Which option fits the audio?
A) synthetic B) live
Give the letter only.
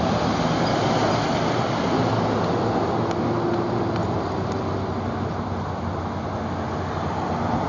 B